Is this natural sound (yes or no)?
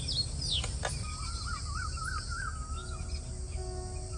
yes